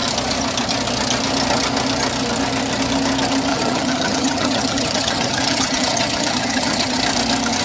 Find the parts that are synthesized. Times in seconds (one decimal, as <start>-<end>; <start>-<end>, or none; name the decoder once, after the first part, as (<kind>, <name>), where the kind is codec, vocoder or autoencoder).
3.5-7.0 (vocoder, HiFi-GAN)